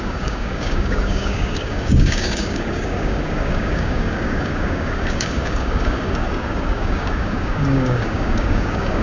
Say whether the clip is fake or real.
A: fake